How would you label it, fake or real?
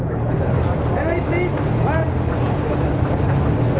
real